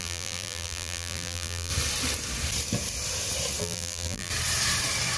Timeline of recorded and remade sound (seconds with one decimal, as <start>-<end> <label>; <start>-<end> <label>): 0.0-1.7 remade; 1.7-3.6 recorded; 3.6-4.3 remade; 4.3-5.2 recorded